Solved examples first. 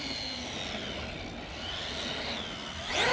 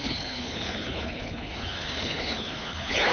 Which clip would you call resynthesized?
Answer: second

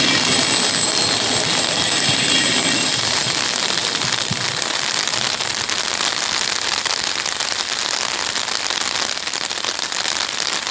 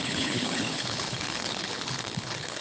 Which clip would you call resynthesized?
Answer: second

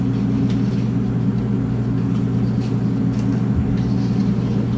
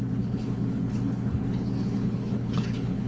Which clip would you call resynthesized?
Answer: second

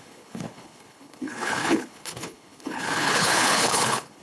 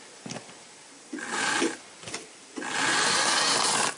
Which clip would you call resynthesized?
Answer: first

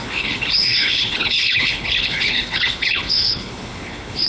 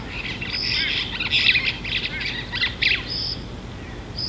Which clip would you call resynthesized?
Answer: first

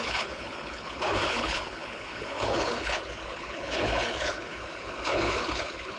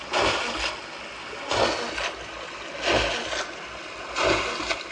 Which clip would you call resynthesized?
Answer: first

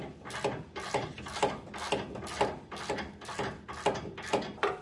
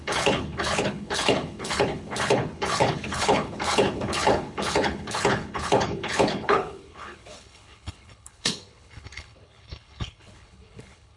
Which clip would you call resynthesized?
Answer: second